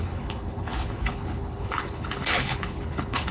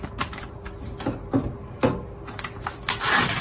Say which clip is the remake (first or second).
first